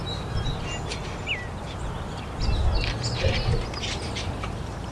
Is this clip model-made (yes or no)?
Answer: no